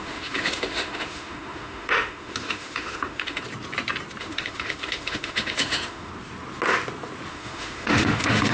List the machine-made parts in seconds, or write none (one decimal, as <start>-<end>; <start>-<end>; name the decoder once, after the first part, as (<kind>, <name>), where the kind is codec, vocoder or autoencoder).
0.0-3.4 (autoencoder, DAC-VAE); 4.2-6.1; 7.3-8.5